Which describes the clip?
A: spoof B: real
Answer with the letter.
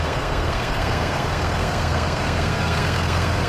A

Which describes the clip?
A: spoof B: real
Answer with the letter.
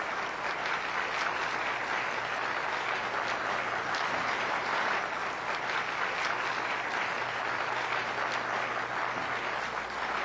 B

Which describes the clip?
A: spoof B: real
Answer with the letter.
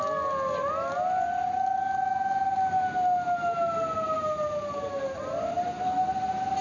B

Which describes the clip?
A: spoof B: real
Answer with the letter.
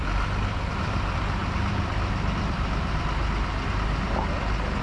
B